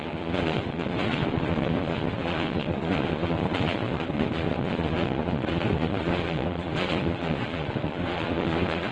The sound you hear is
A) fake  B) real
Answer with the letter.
A